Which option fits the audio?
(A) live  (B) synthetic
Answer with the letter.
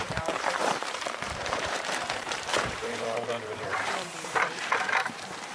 B